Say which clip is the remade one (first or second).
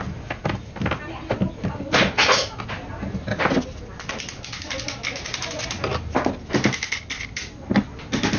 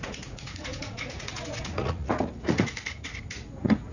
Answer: second